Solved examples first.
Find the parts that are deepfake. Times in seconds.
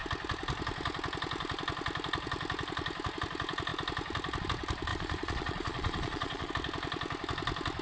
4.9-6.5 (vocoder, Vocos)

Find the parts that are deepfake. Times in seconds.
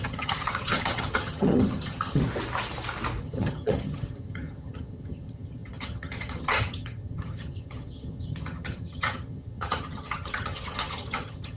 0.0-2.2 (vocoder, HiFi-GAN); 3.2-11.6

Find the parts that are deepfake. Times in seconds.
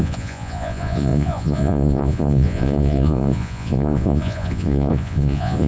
0.0-5.7 (vocoder, Vocos)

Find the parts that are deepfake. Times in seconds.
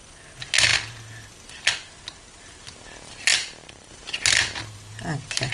3.3-3.9 (vocoder, BigVGAN v2)